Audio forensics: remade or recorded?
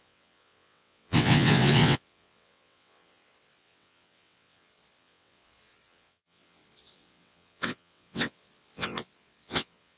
remade